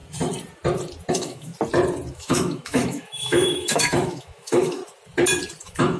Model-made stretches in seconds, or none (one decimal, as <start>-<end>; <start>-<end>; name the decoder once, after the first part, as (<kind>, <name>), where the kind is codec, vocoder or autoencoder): 1.1-1.5 (autoencoder, DAC-VAE); 2.1-4.8; 5.6-6.0

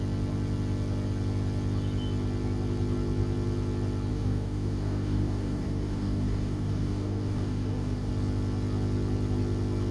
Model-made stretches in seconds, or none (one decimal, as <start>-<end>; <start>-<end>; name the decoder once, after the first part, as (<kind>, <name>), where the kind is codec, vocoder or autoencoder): 4.1-8.1 (codec, DAC)

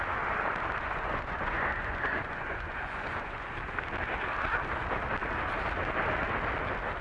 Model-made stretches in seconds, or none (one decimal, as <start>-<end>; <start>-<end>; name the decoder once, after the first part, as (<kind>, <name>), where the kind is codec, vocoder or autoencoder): 0.8-3.5 (vocoder, Vocos)

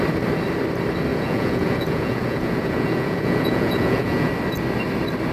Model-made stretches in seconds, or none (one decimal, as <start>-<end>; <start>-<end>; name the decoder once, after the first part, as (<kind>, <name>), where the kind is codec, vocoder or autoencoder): 1.1-4.3 (vocoder, Vocos)